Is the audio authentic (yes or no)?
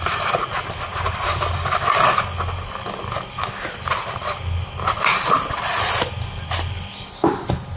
yes